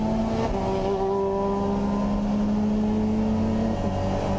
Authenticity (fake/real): real